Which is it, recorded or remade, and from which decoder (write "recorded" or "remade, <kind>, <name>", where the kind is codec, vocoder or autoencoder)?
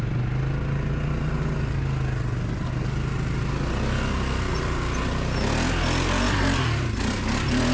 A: recorded